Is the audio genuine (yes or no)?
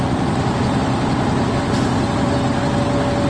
yes